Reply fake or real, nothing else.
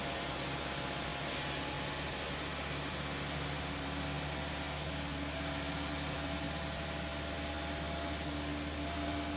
real